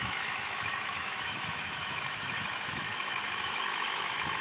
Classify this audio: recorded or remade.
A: remade